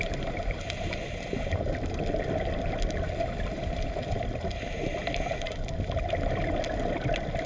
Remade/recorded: remade